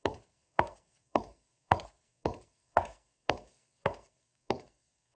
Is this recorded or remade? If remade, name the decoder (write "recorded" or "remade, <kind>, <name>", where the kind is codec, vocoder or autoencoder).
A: remade, codec, SNAC